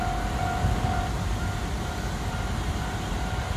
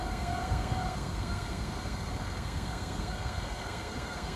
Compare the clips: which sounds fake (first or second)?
second